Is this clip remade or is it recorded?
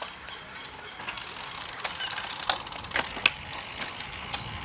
recorded